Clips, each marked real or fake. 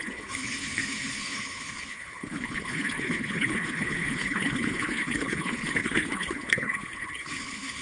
fake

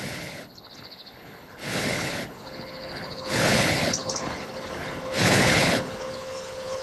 fake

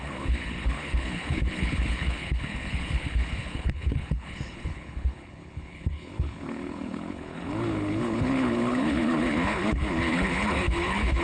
fake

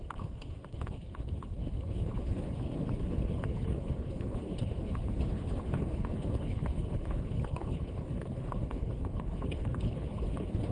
fake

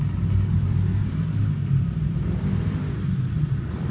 real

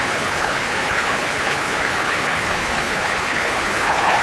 fake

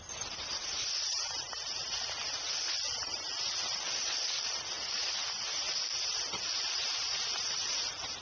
real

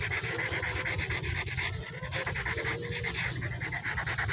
real